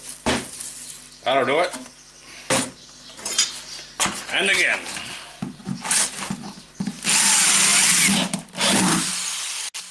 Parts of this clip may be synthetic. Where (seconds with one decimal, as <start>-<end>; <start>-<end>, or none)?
none

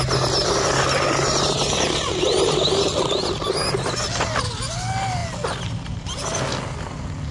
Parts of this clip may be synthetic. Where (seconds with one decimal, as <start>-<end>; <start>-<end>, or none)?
none

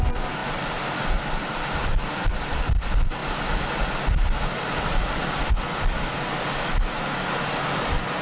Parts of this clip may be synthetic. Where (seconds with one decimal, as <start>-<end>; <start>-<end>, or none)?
none

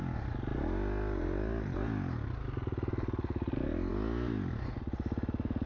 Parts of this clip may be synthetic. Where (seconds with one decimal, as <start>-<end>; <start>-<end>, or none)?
none